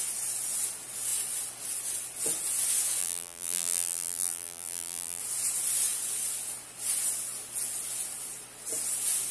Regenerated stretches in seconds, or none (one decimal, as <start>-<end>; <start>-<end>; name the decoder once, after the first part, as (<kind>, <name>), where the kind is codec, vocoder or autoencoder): 3.0-5.2 (vocoder, BigVGAN v2)